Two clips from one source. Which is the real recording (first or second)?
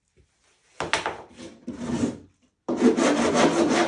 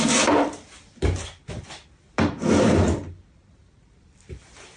first